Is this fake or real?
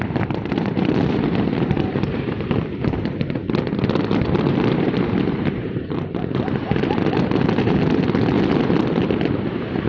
fake